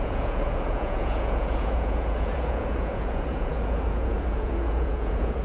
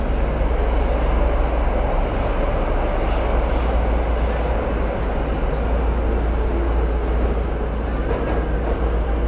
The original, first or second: second